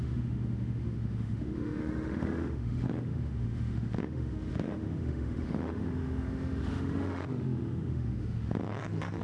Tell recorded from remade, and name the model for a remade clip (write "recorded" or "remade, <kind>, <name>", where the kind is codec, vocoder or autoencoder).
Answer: remade, autoencoder, DAC-VAE